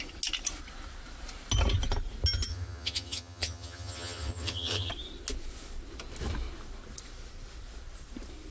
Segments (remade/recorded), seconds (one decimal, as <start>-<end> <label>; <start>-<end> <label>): 0.0-2.5 recorded; 2.5-4.9 remade; 4.9-8.5 recorded